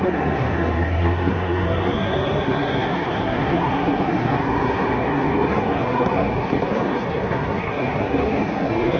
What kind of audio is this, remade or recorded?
remade